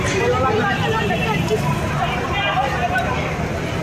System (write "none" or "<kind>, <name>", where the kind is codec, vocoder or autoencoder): none